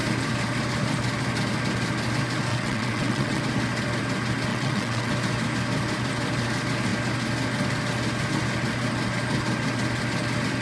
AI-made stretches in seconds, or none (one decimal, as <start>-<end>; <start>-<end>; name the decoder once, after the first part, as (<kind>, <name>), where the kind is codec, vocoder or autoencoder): 2.5-3.4 (vocoder, WaveNeXt); 4.5-5.1